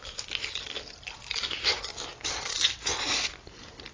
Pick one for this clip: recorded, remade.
recorded